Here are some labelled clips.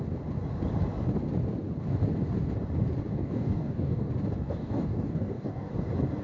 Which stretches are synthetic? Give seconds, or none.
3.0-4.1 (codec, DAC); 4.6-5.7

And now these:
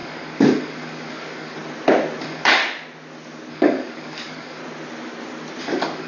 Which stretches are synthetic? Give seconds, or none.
0.0-1.6 (codec, DAC); 2.2-2.6; 3.5-4.6; 5.6-6.1

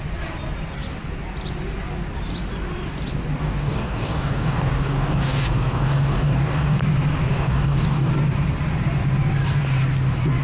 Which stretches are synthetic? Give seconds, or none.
3.4-6.8 (codec, DAC); 7.3-8.1